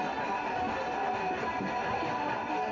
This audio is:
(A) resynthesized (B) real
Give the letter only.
B